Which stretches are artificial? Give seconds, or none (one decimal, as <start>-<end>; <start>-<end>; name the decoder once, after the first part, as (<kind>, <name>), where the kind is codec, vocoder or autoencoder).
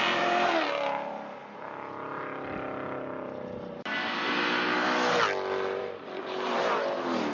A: 0.0-1.4 (vocoder, BigVGAN v2); 5.8-7.3